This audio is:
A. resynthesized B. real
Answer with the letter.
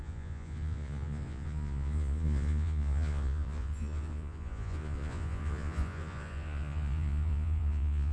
A